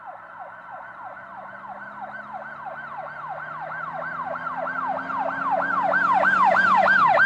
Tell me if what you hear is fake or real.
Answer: real